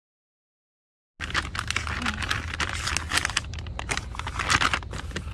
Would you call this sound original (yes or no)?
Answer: yes